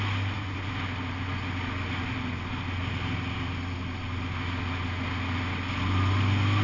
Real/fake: real